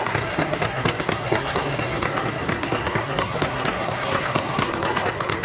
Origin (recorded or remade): remade